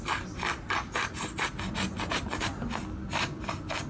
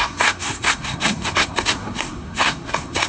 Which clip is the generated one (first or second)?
second